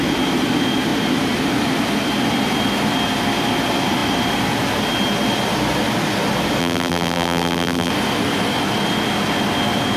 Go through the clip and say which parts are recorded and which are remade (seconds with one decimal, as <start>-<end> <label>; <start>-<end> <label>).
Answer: 0.0-6.6 recorded; 6.6-7.9 remade; 7.9-10.0 recorded